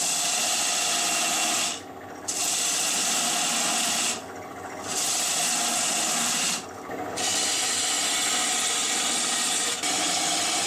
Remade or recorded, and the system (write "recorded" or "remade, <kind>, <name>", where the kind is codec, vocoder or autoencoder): recorded